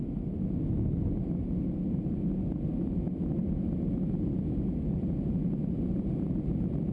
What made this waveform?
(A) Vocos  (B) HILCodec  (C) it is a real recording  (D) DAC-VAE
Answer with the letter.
C